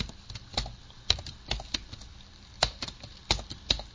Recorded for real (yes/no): yes